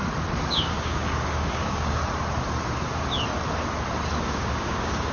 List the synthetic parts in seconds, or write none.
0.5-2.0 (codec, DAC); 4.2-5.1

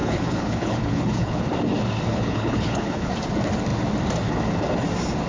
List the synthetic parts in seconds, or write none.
0.0-1.5 (codec, HILCodec); 2.1-3.1